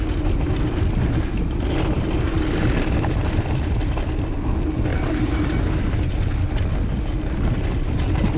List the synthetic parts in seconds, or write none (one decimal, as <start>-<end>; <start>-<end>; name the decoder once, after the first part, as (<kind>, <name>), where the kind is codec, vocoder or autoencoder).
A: none